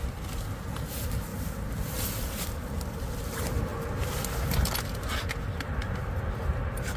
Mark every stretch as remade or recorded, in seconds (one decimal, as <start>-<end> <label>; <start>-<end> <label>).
0.0-7.0 recorded